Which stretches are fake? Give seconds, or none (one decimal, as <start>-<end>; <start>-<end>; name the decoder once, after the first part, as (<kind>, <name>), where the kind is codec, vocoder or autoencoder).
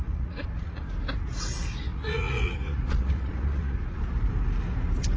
0.0-0.8 (vocoder, Vocos); 1.9-4.0